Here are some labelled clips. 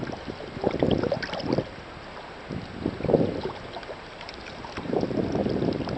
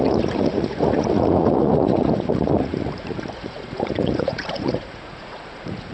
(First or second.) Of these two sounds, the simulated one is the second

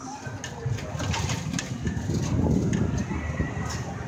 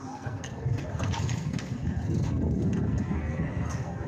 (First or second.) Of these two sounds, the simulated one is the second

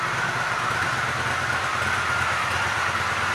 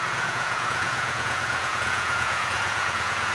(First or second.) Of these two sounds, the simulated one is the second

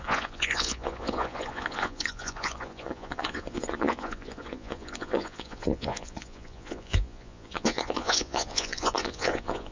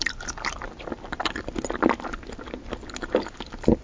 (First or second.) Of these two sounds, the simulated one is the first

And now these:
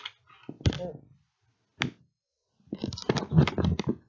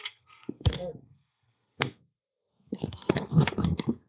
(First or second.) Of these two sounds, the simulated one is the second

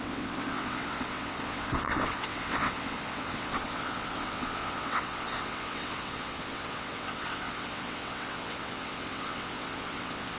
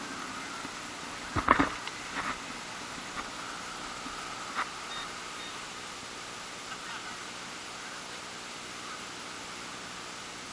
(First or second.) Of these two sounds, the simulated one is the first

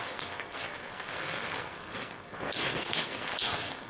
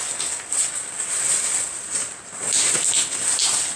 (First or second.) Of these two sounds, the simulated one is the first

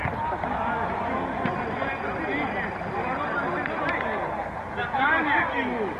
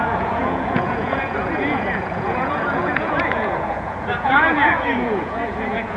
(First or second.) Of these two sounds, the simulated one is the second